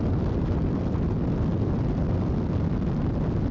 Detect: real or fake real